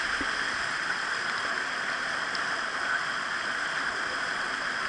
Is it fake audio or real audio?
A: real